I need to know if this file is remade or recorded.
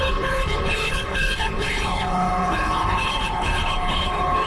remade